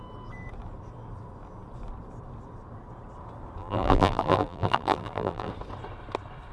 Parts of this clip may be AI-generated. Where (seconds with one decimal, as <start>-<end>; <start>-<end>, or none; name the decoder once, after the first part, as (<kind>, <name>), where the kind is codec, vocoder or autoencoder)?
3.6-5.5 (vocoder, BigVGAN v2)

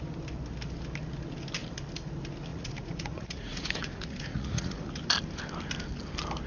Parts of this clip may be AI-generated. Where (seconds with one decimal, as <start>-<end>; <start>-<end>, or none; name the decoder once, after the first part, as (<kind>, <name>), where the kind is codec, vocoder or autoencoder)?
2.5-4.9 (vocoder, Vocos)